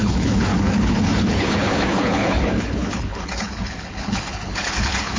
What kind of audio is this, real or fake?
fake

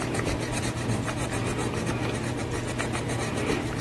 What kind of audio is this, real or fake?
real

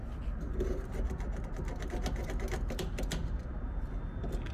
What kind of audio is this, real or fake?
real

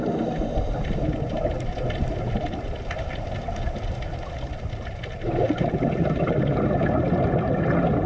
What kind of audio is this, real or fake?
real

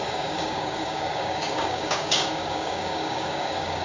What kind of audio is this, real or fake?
fake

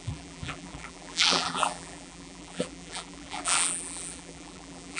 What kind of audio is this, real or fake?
fake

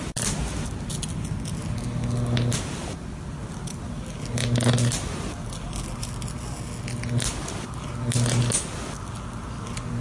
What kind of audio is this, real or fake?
real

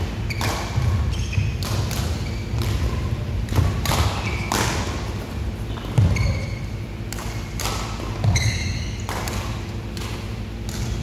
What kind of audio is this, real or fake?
real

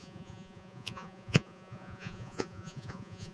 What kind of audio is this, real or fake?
fake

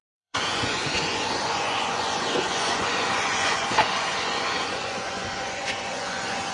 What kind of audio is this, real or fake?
fake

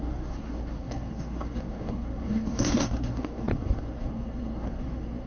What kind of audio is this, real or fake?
fake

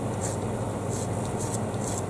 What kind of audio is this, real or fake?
real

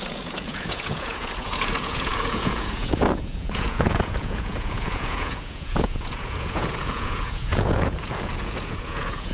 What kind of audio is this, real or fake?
fake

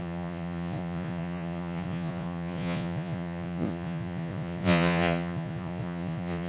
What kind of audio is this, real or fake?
fake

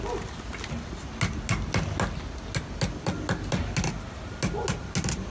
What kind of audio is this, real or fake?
real